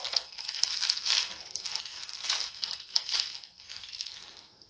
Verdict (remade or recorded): remade